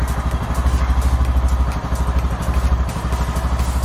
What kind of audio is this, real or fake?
real